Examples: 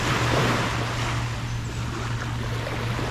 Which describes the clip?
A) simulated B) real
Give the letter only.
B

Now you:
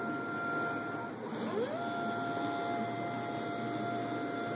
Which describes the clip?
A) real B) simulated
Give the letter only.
A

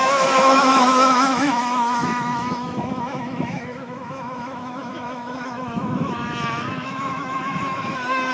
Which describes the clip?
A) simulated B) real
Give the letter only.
A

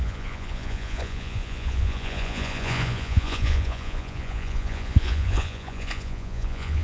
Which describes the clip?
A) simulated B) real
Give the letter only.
A